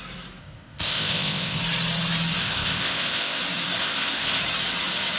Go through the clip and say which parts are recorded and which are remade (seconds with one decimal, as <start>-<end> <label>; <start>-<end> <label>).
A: 0.0-0.4 recorded; 0.4-1.6 remade; 1.6-2.4 recorded; 2.4-3.4 remade; 3.4-3.8 recorded; 3.8-4.4 remade; 4.4-5.2 recorded